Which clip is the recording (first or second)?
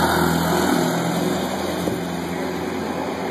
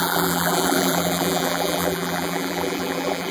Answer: first